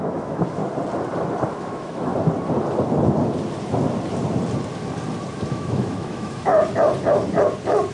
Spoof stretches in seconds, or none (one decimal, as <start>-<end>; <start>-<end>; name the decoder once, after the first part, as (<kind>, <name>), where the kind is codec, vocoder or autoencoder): 0.0-0.6 (autoencoder, DAC-VAE); 1.5-2.1; 5.5-6.5